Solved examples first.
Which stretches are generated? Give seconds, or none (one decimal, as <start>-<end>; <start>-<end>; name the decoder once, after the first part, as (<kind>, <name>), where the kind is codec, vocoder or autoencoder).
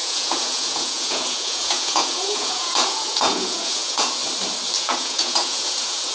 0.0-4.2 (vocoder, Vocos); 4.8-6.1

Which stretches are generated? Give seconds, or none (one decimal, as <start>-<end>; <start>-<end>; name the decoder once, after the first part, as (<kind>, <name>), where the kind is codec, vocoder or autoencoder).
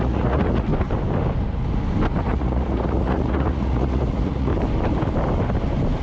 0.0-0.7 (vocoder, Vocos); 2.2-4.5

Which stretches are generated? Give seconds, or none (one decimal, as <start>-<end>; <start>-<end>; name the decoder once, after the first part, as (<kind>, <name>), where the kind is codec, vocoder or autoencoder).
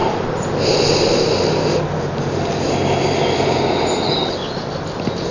none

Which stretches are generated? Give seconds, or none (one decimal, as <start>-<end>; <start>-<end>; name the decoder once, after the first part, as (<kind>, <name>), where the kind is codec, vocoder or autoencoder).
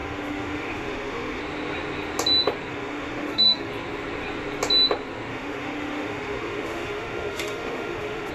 0.0-1.4 (autoencoder, DAC-VAE); 2.7-3.7; 5.3-8.3